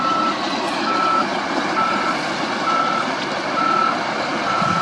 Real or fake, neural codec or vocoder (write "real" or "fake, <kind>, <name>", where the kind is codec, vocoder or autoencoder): real